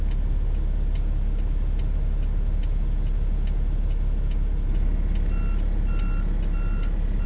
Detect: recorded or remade recorded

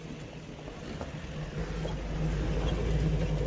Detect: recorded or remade recorded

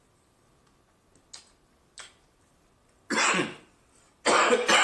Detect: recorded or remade recorded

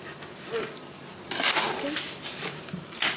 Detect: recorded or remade recorded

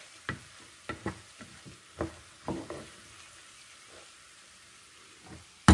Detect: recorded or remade recorded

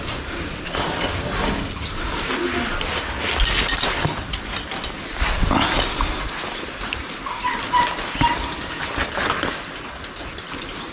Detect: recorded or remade recorded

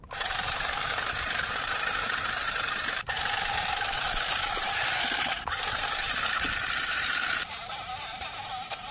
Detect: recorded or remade remade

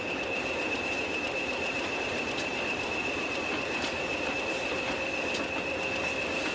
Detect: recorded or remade remade